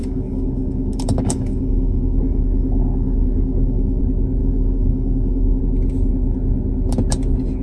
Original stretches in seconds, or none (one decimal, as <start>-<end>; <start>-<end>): 4.0-4.4; 5.6-7.6